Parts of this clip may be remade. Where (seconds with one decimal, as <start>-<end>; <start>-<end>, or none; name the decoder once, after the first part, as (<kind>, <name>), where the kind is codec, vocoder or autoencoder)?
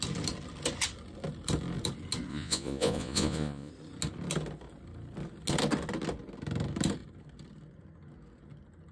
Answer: 2.3-3.7 (vocoder, Vocos)